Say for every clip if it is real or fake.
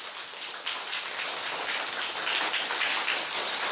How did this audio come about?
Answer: real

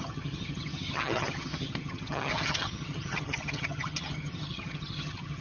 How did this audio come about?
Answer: fake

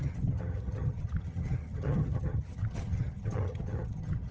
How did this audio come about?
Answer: fake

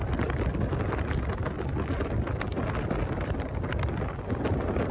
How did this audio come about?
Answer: real